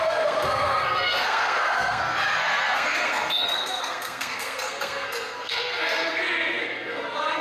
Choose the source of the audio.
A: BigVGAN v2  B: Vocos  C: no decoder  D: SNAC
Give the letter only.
D